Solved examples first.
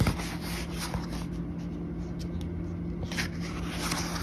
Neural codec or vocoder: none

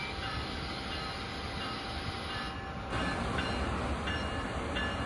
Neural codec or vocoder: none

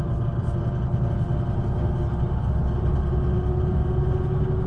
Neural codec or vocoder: none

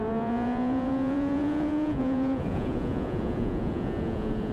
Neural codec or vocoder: vocoder, Vocos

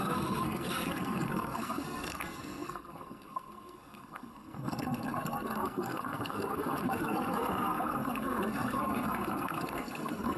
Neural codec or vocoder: codec, SNAC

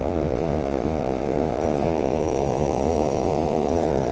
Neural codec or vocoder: vocoder, Vocos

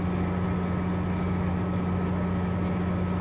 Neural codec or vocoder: none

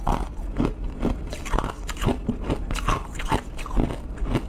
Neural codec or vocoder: none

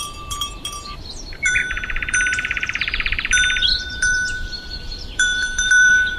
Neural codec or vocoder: vocoder, BigVGAN v2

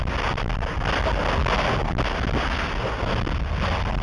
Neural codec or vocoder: none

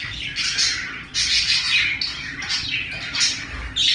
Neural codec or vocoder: none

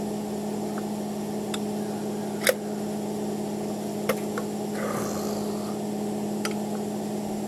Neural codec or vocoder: none